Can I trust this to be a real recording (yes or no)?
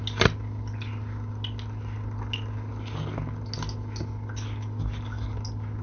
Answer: yes